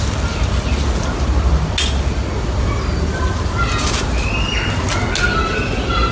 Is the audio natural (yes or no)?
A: yes